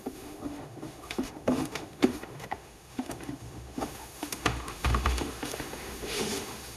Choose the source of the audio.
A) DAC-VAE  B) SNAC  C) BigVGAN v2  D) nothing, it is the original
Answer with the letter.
A